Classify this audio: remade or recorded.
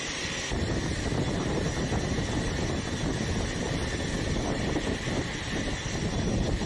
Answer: recorded